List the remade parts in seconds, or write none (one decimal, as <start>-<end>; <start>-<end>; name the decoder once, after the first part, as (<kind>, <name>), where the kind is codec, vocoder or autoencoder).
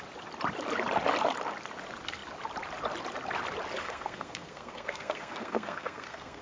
3.8-6.4 (codec, SNAC)